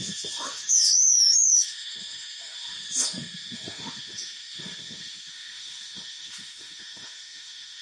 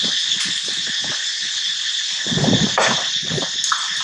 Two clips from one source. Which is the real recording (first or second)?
second